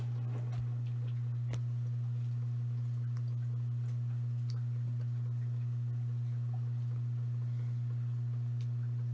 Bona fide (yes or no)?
yes